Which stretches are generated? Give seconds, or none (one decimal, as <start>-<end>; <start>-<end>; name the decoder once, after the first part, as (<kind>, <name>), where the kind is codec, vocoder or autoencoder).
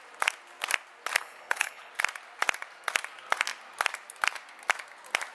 1.2-1.9 (codec, HILCodec)